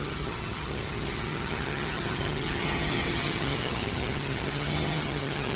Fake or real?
fake